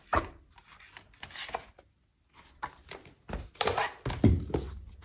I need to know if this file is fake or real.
real